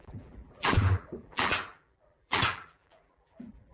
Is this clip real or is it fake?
fake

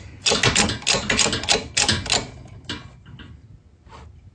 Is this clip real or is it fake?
real